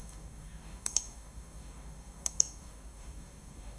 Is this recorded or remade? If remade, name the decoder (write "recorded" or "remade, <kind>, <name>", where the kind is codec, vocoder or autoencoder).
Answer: remade, codec, DAC